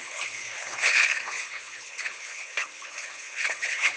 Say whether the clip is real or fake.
fake